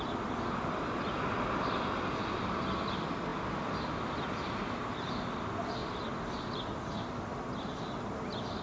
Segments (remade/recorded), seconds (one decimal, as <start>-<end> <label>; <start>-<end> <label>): 0.0-8.6 recorded